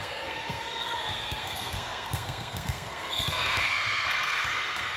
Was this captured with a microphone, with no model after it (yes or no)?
no